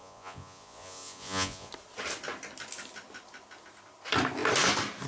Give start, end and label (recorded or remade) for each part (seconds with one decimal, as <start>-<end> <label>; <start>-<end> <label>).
0.0-1.7 remade; 1.7-5.1 recorded

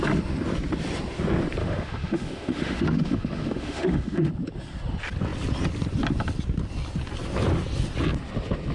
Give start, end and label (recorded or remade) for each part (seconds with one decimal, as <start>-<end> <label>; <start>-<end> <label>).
0.0-1.6 recorded; 1.6-4.3 remade; 4.3-8.7 recorded

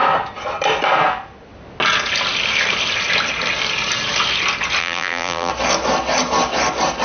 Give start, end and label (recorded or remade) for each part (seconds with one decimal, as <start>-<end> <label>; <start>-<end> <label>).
0.0-4.8 recorded; 4.8-5.5 remade; 5.5-7.0 recorded

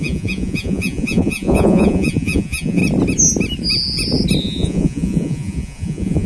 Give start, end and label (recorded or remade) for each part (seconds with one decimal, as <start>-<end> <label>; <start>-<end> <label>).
0.0-2.8 remade; 2.8-4.4 recorded; 4.4-6.3 remade

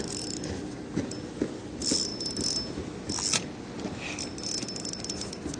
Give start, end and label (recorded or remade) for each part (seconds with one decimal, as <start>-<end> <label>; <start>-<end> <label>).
0.0-5.6 recorded

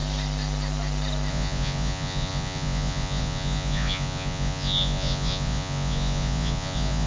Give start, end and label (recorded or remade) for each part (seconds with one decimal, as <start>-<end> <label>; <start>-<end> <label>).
0.0-1.3 recorded; 1.3-7.1 remade

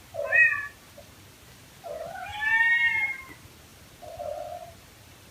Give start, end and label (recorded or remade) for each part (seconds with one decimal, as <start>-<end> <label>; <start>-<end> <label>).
0.0-0.5 recorded; 0.5-1.4 remade; 1.4-3.7 recorded; 3.7-5.3 remade

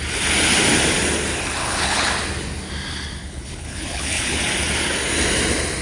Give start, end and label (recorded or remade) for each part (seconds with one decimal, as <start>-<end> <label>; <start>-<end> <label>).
0.0-1.6 recorded; 1.6-2.1 remade; 2.1-3.2 recorded; 3.2-4.4 remade; 4.4-5.8 recorded